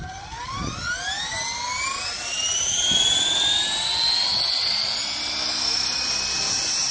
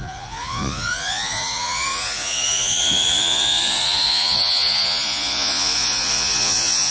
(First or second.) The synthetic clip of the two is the second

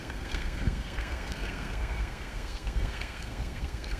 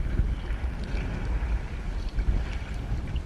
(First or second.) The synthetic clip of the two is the first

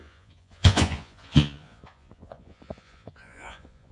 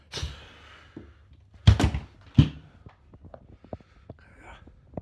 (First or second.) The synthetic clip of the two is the first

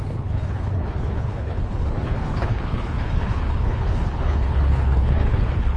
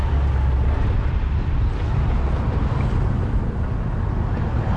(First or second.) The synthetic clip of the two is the first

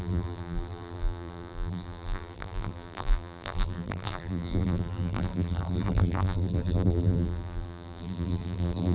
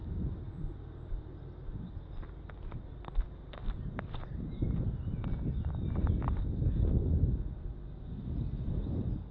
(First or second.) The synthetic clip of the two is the first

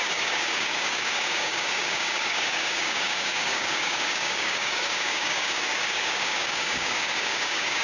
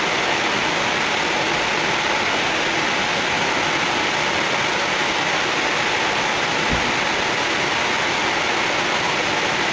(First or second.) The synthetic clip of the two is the first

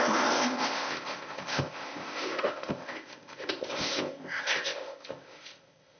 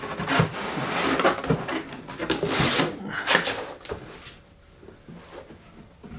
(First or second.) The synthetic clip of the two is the first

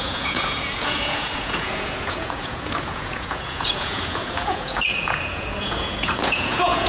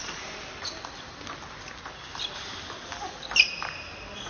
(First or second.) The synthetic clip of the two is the first